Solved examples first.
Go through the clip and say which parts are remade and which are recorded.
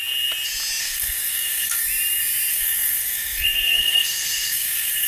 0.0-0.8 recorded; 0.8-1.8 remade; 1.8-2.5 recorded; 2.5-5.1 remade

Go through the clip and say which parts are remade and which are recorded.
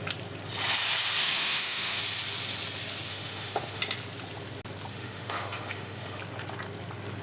0.0-1.2 recorded; 1.2-2.0 remade; 2.0-3.1 recorded; 3.1-3.8 remade; 3.8-4.9 recorded; 4.9-6.2 remade; 6.2-7.2 recorded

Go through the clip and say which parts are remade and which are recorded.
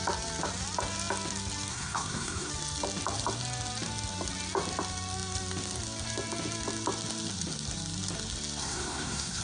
0.0-1.7 recorded; 1.7-2.5 remade; 2.5-8.6 recorded; 8.6-9.4 remade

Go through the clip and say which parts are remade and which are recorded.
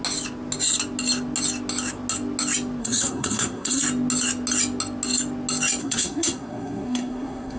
0.0-2.8 recorded; 2.8-3.8 remade; 3.8-5.8 recorded; 5.8-7.6 remade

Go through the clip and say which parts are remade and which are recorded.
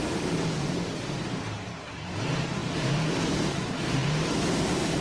0.0-5.0 remade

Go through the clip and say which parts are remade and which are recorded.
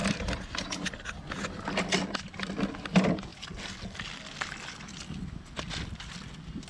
0.0-6.7 recorded